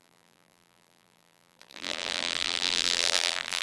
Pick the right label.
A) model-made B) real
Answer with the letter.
A